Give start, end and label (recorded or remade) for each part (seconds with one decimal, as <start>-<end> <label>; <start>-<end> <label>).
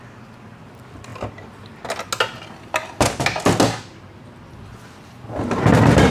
0.0-6.1 recorded